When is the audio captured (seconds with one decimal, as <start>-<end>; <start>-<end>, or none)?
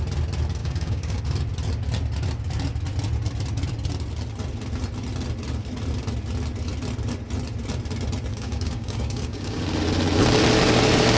0.0-0.6; 1.2-8.3; 9.6-11.2